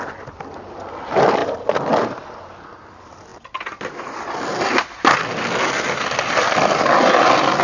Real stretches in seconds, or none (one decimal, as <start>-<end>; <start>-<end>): 0.0-7.6